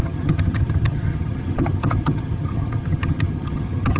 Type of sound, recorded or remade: remade